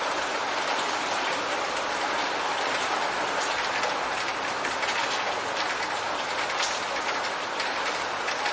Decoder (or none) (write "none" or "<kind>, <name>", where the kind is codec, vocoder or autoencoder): none